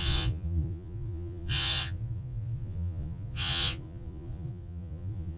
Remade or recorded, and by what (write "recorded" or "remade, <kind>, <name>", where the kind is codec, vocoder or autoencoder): remade, vocoder, Vocos